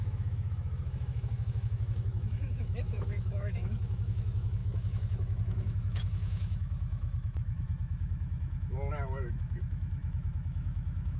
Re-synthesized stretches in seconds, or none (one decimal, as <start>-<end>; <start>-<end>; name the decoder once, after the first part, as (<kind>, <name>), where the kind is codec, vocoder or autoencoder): 0.0-11.2 (autoencoder, DAC-VAE)